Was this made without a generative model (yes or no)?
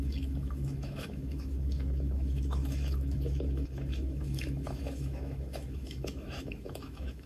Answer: no